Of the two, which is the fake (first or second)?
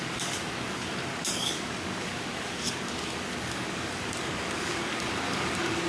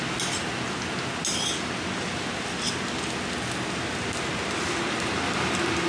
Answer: first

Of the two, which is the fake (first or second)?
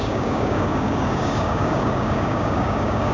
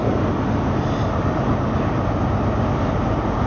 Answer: first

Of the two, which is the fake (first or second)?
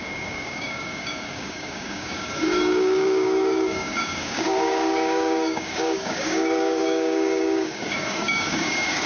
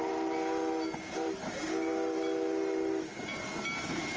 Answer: first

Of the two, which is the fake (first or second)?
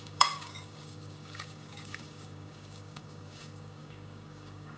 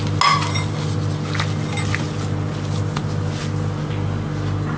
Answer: first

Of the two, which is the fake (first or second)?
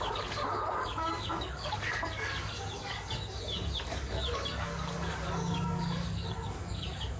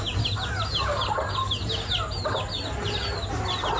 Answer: first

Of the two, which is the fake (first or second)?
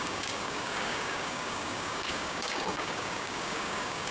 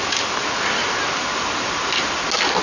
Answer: first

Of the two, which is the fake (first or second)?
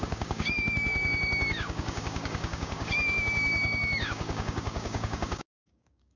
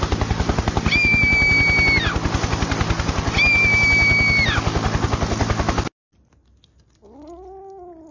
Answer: first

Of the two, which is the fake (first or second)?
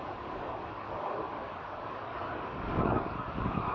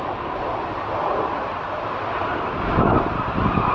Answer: first